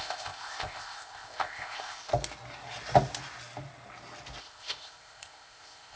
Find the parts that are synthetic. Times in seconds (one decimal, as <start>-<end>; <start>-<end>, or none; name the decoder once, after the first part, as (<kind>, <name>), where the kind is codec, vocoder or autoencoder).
0.0-2.1 (codec, ZipCodec); 4.4-6.0